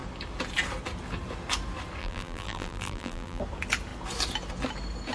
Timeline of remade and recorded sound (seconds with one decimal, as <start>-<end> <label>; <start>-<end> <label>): 0.0-2.0 recorded; 2.0-3.4 remade; 3.4-5.1 recorded